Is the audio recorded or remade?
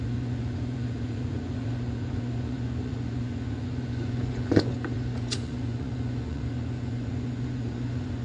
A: remade